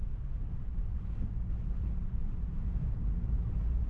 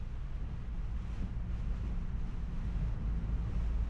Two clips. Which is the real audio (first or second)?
second